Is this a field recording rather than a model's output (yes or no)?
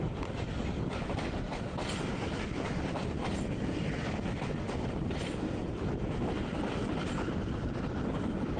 no